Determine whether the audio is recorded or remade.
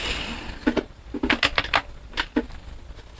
recorded